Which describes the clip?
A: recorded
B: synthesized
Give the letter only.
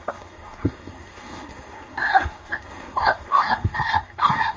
B